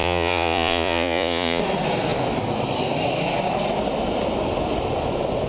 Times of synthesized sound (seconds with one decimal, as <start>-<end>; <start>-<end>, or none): 0.0-1.6